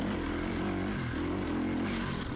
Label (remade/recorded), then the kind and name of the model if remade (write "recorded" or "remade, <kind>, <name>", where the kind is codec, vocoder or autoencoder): recorded